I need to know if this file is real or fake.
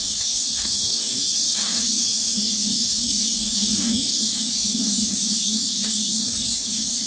fake